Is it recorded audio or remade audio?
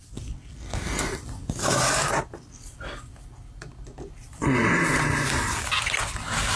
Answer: recorded